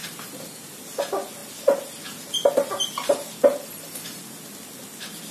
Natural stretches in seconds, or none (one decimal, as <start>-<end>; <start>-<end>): 0.7-5.3

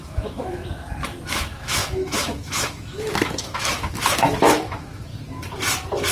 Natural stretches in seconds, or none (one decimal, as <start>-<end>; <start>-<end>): 0.6-1.3; 5.1-6.1

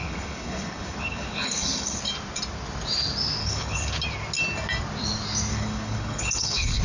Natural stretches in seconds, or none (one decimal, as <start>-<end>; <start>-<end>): 2.0-3.4; 3.9-5.5